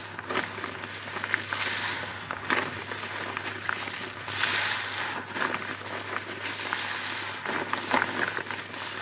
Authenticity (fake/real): real